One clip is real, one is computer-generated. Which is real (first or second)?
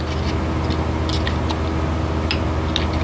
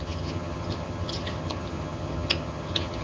first